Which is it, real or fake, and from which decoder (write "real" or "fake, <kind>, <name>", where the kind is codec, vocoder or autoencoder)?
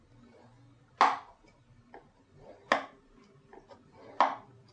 real